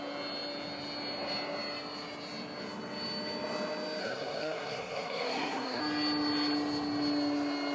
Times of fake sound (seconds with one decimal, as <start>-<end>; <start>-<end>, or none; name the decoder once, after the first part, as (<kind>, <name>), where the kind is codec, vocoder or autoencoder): 4.0-5.8 (codec, SNAC)